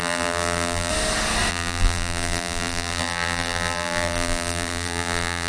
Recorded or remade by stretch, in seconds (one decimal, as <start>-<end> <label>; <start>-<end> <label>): 0.0-0.9 remade; 0.9-1.5 recorded; 1.5-5.5 remade